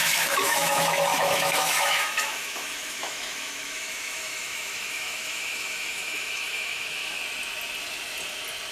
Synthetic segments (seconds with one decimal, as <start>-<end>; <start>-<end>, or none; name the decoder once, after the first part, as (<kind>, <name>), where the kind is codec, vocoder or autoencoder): 0.0-7.2 (autoencoder, DAC-VAE)